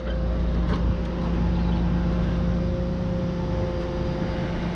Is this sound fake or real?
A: real